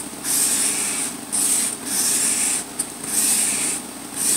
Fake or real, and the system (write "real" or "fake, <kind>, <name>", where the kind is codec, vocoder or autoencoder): real